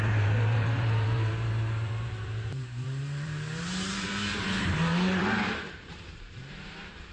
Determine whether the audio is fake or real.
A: fake